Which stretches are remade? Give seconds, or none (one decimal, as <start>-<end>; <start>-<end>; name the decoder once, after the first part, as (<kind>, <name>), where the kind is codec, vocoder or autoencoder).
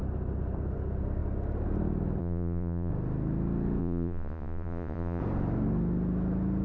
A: 2.2-2.9 (vocoder, Vocos); 3.8-5.2